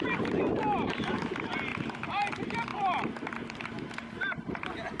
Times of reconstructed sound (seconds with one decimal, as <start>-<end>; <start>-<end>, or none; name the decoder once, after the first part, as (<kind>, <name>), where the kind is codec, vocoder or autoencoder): 1.7-2.3 (vocoder, BigVGAN v2); 2.7-3.6